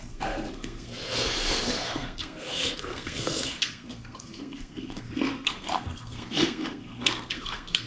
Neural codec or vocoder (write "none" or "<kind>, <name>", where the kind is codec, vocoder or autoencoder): codec, SNAC